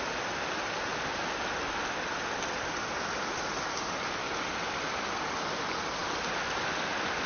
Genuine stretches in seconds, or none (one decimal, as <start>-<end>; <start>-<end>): 0.0-7.3